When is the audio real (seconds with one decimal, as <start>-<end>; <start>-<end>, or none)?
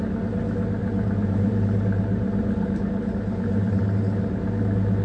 0.0-0.8; 3.8-5.0